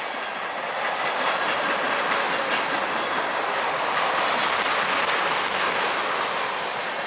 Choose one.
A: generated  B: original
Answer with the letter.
B